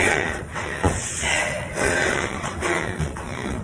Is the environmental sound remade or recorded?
remade